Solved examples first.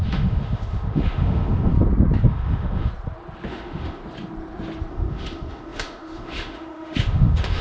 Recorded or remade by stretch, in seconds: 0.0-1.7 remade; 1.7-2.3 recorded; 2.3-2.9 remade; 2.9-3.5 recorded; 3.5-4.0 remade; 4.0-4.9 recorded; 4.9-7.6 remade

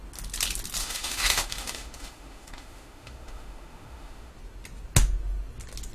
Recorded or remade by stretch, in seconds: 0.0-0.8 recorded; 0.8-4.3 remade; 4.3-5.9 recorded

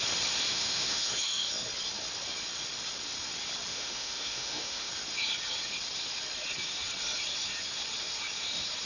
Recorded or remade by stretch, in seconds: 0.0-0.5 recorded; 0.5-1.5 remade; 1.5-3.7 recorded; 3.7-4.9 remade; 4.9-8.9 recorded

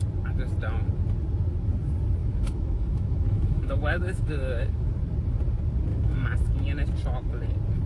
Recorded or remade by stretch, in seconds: 0.0-2.2 recorded; 2.2-4.9 remade; 4.9-5.9 recorded; 5.9-6.5 remade; 6.5-7.9 recorded

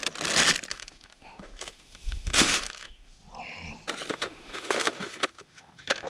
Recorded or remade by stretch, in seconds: 0.0-0.7 recorded; 0.7-3.2 remade; 3.2-4.1 recorded; 4.1-6.1 remade

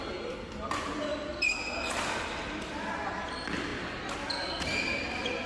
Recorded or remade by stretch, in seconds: 0.0-5.5 recorded